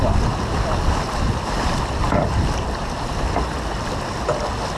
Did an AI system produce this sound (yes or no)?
no